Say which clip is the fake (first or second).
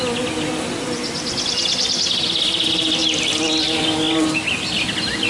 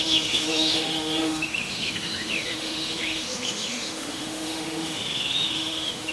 second